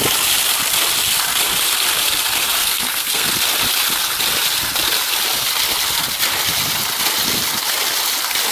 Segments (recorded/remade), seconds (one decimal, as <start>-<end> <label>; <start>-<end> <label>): 0.0-2.6 recorded; 2.6-3.3 remade; 3.3-8.5 recorded